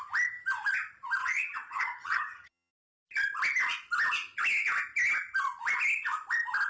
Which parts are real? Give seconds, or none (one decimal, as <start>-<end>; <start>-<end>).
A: 0.0-1.2; 2.7-6.7